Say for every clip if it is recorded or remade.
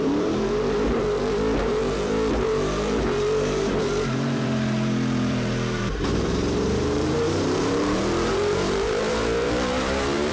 remade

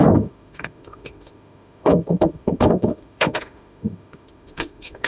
remade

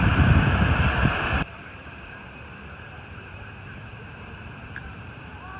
remade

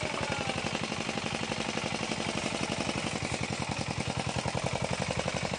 recorded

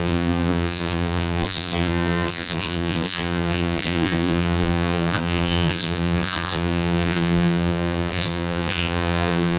remade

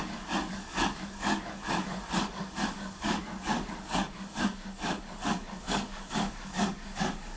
remade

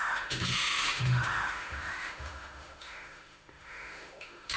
remade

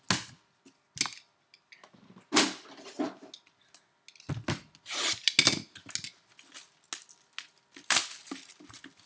recorded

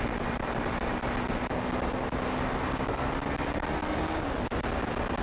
recorded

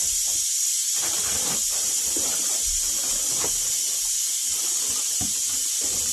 remade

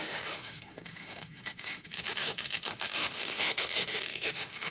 remade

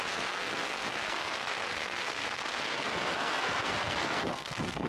remade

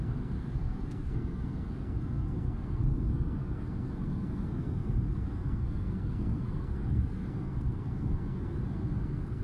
remade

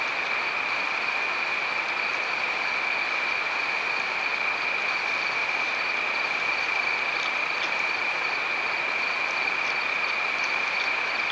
recorded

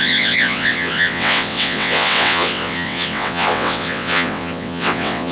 remade